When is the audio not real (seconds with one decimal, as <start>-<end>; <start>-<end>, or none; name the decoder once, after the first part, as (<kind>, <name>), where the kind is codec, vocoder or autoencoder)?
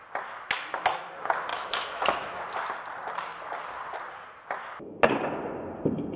1.5-2.4 (autoencoder, DAC-VAE)